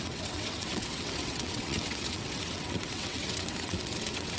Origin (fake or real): fake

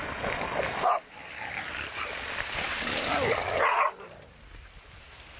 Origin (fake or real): real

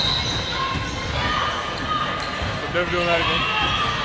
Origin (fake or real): real